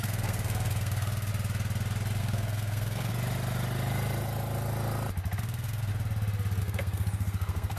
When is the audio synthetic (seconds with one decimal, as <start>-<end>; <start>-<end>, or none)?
0.0-1.3; 2.2-3.1; 5.4-5.9; 6.6-7.8